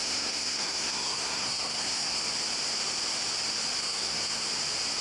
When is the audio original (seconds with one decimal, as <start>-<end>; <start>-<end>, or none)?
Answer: 2.2-3.8; 4.5-5.0